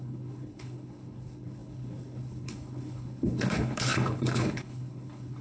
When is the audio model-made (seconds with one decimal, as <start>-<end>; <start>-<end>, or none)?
0.0-5.4